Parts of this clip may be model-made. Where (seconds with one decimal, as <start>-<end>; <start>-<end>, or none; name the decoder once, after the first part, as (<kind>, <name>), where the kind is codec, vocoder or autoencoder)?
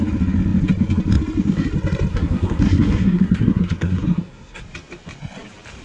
2.1-4.6 (codec, SNAC)